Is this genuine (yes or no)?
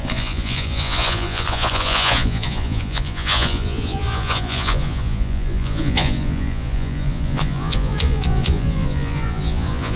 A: no